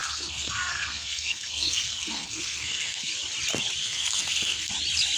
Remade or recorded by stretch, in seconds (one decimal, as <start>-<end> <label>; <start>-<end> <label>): 0.0-3.1 remade; 3.1-3.8 recorded; 3.8-4.7 remade; 4.7-5.2 recorded